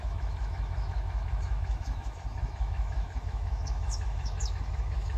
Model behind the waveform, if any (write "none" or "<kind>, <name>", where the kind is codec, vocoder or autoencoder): autoencoder, DAC-VAE